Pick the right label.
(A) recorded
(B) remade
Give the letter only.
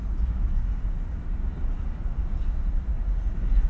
A